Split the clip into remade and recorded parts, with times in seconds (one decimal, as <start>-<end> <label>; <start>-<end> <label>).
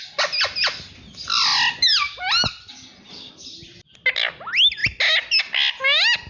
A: 0.0-6.3 recorded